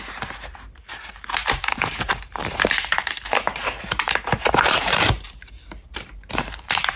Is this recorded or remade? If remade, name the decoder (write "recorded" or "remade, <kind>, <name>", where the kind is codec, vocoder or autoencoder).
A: remade, vocoder, BigVGAN v2